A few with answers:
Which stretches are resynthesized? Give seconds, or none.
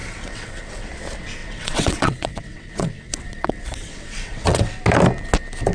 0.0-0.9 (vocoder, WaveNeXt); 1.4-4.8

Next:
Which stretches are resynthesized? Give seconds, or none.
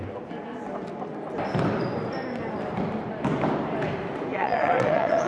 4.3-5.3 (vocoder, WaveNeXt)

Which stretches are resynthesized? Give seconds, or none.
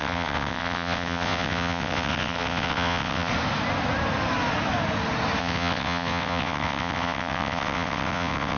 0.0-3.3 (vocoder, WaveNeXt); 5.4-8.6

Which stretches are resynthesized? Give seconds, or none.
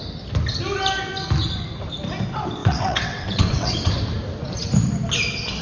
2.6-3.9 (vocoder, WaveNeXt)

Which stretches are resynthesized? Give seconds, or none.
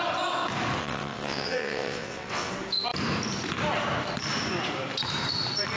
0.8-2.5 (vocoder, WaveNeXt)